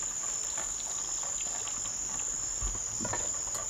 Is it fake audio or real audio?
real